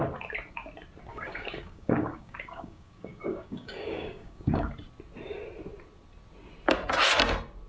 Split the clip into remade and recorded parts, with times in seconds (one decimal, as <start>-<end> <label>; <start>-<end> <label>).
0.0-1.1 recorded; 1.1-4.7 remade; 4.7-7.7 recorded